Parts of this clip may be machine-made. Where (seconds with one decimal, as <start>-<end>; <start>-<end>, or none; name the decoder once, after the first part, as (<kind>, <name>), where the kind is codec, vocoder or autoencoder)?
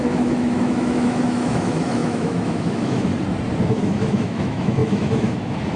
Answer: 0.0-3.1 (autoencoder, DAC-VAE); 3.6-5.8